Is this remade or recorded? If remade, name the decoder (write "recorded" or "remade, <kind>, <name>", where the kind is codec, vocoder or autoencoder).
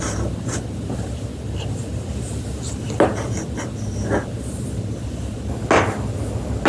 recorded